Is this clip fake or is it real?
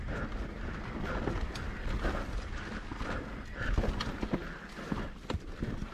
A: real